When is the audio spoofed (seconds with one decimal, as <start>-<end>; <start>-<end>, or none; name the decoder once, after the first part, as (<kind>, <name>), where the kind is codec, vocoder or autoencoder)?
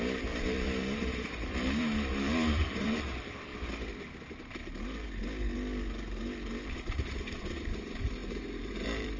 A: 0.0-3.5 (vocoder, BigVGAN v2); 7.4-9.2